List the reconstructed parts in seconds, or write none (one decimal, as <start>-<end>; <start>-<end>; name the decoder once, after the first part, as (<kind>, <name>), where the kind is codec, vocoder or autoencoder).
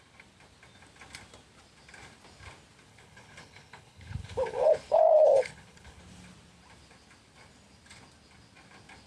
2.9-6.0 (codec, HILCodec)